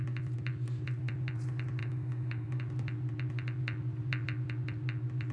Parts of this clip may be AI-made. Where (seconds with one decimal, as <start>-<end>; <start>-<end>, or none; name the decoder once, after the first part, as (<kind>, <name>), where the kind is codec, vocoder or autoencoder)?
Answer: 1.8-2.6 (autoencoder, DAC-VAE)